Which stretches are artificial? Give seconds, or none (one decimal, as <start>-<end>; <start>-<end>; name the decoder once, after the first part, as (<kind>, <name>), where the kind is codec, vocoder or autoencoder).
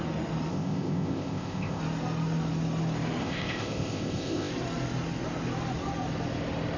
0.5-1.8 (codec, ZipCodec); 3.2-4.5